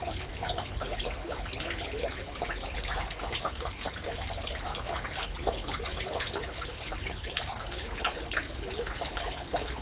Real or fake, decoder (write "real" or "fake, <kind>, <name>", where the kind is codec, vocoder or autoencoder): fake, codec, HILCodec